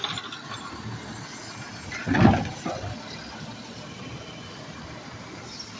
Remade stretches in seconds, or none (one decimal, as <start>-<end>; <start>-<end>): none